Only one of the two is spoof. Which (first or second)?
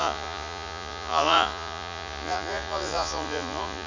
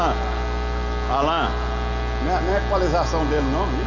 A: first